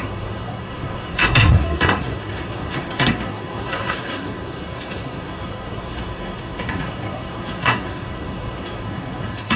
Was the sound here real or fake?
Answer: fake